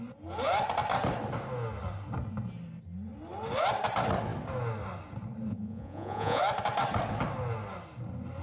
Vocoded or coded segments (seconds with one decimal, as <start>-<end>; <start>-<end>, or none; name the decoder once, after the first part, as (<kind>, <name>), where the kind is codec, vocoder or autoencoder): 5.5-6.4 (vocoder, Vocos)